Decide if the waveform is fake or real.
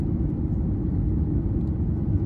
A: real